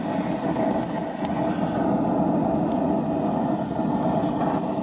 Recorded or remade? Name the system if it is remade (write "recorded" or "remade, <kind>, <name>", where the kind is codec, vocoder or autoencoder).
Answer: recorded